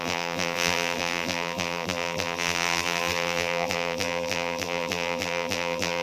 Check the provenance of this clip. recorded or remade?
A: remade